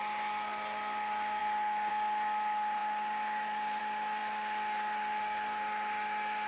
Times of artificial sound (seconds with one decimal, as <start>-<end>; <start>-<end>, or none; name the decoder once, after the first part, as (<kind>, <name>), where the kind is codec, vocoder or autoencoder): none